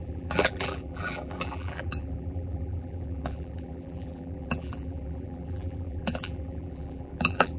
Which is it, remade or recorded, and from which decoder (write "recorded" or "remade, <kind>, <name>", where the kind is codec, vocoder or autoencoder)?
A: remade, vocoder, BigVGAN v2